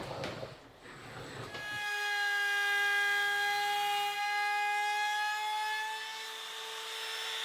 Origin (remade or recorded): recorded